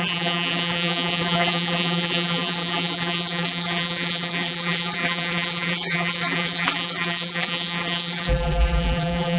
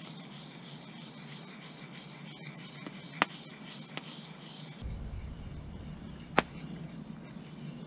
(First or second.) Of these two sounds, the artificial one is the first